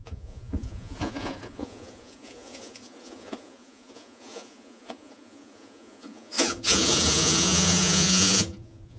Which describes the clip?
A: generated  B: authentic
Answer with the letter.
A